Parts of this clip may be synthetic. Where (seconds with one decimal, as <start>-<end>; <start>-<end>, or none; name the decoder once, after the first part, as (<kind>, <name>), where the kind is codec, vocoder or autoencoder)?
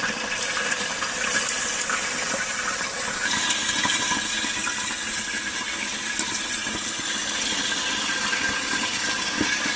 7.2-9.0 (vocoder, BigVGAN v2)